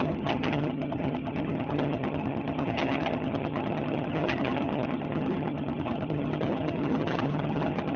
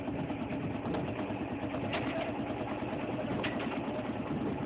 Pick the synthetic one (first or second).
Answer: first